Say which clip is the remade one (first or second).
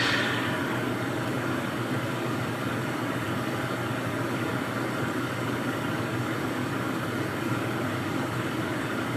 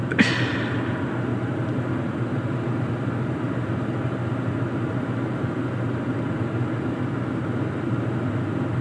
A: first